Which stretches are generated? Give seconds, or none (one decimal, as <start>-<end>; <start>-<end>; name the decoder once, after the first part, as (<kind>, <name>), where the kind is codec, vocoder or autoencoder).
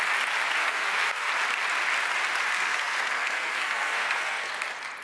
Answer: 0.6-1.3 (codec, SNAC); 2.5-4.5